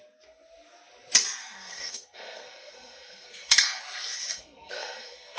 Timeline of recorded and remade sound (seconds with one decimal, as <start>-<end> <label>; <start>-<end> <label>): 0.0-1.4 recorded; 1.4-3.8 remade; 3.8-4.3 recorded; 4.3-5.4 remade